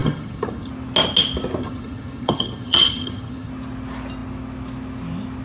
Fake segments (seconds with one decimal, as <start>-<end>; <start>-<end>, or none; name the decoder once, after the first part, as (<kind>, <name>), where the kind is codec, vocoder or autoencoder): 0.0-0.7 (vocoder, HiFi-GAN); 1.6-3.5